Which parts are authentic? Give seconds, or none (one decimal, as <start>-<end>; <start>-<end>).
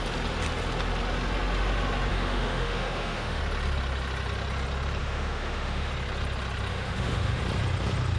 0.0-2.1; 3.4-5.0; 5.9-6.7; 7.4-8.2